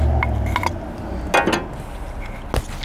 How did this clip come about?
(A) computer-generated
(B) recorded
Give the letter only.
B